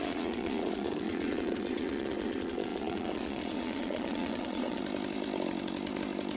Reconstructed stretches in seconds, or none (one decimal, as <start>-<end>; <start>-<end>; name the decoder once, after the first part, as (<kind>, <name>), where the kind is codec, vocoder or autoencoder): 0.0-4.8 (vocoder, Vocos)